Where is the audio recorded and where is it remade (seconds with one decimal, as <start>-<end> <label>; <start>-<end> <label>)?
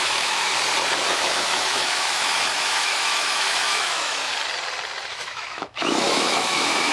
0.0-0.5 remade; 0.5-1.1 recorded; 1.1-4.3 remade; 4.3-5.1 recorded; 5.1-6.9 remade